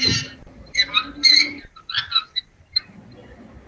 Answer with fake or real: fake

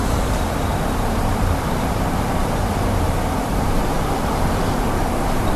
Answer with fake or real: fake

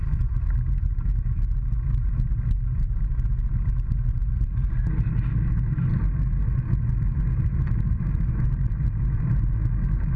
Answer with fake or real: real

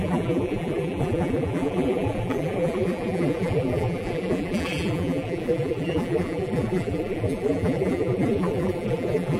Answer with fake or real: fake